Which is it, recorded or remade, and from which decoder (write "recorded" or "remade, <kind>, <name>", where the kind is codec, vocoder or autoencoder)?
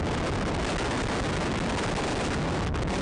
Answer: recorded